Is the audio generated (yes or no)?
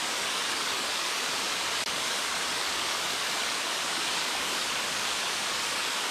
yes